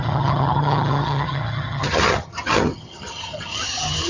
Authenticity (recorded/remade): remade